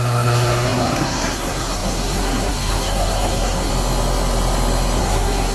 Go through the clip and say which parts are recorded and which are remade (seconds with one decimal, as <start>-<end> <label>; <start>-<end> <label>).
0.0-3.7 remade; 3.7-5.0 recorded; 5.0-5.5 remade